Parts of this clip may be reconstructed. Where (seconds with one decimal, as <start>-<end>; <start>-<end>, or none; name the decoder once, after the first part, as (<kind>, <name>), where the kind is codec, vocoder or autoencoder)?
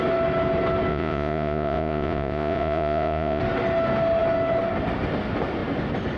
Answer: 0.9-3.4 (vocoder, Vocos)